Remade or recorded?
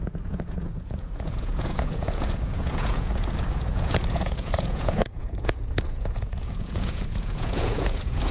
remade